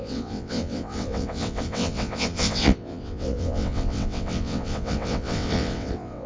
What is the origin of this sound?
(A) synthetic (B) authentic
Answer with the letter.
A